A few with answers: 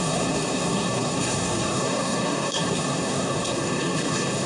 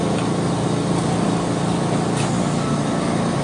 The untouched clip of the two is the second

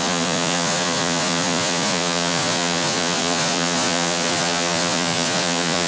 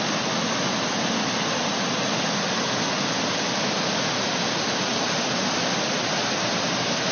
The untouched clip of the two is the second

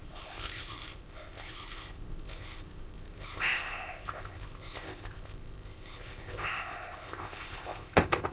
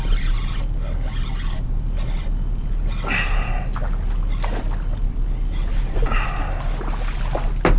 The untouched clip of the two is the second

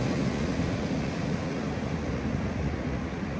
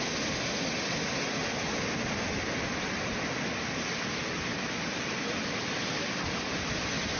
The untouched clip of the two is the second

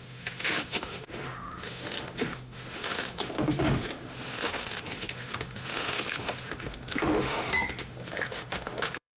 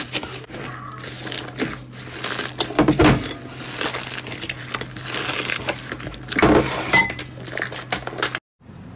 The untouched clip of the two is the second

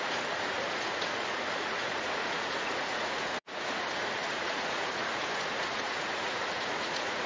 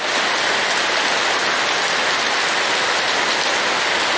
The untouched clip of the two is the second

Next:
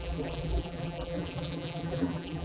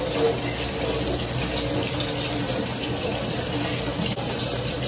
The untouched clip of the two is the second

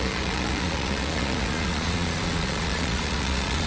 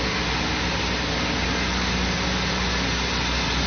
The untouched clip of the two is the second